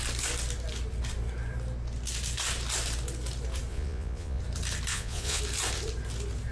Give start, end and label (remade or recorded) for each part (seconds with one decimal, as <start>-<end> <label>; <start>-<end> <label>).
0.0-3.7 recorded; 3.7-4.4 remade; 4.4-4.9 recorded; 4.9-5.4 remade; 5.4-6.5 recorded